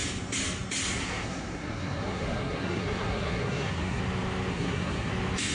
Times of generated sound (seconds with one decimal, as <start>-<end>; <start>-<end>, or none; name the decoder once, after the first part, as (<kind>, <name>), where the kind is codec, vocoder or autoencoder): 1.0-4.0 (codec, SNAC); 4.5-5.1